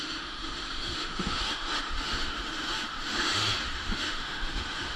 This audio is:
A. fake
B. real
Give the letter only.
A